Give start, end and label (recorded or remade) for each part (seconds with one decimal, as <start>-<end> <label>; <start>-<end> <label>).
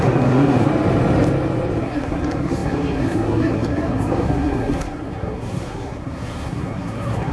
0.0-0.7 remade; 0.7-1.8 recorded; 1.8-7.3 remade